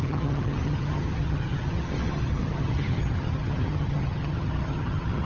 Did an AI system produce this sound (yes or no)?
yes